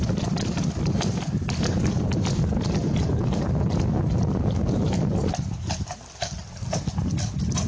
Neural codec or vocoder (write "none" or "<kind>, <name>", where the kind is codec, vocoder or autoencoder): none